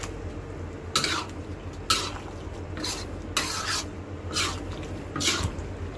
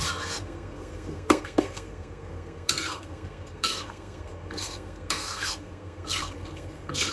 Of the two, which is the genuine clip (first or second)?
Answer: first